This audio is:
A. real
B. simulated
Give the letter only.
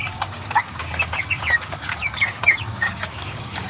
B